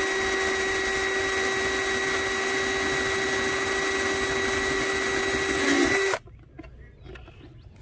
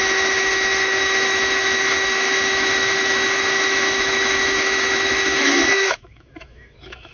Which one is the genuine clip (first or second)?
first